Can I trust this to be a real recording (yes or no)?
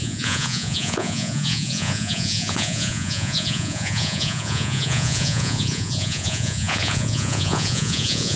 no